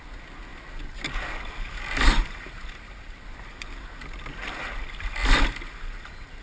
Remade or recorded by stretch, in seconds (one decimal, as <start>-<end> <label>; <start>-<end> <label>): 0.0-6.4 recorded